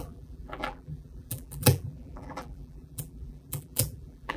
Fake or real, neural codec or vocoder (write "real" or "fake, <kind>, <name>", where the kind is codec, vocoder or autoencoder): fake, vocoder, BigVGAN v2